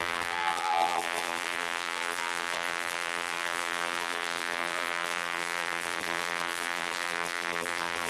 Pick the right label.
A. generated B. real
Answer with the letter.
A